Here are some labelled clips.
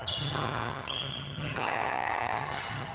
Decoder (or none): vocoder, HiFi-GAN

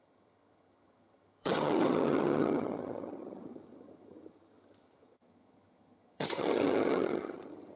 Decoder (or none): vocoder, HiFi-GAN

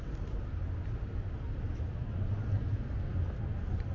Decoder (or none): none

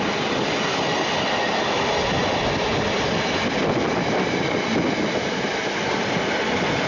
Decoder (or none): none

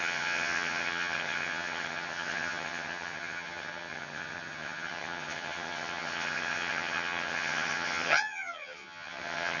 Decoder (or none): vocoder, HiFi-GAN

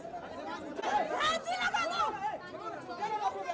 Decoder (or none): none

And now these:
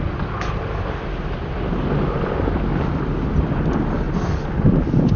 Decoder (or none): none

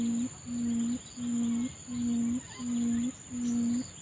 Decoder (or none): none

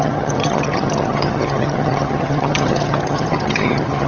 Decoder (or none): vocoder, HiFi-GAN